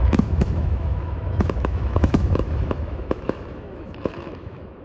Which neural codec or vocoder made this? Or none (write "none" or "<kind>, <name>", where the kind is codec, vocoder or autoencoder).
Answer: autoencoder, DAC-VAE